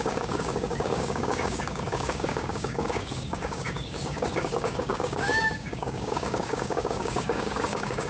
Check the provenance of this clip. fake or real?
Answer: fake